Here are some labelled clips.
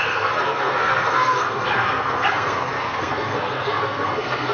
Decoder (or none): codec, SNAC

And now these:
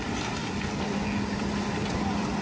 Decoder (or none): none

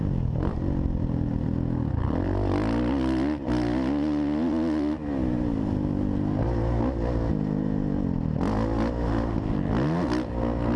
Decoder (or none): none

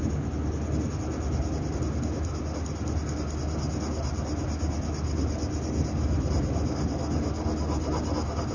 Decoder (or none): none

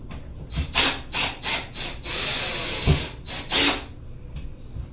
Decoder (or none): none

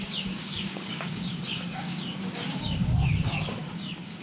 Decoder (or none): codec, DAC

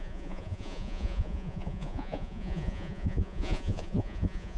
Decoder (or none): vocoder, Vocos